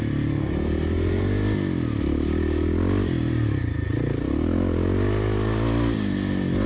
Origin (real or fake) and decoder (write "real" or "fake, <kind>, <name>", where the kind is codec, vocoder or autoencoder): real